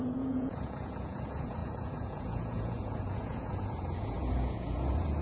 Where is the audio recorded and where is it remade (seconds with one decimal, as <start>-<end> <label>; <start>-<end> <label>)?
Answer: 0.0-5.2 remade